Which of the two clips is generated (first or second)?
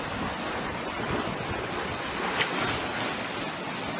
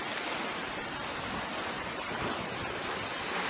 second